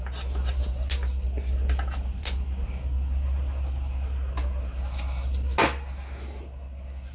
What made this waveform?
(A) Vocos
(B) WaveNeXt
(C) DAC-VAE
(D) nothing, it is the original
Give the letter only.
D